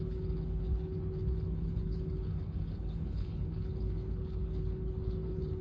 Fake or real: fake